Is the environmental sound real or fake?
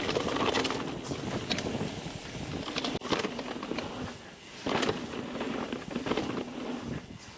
real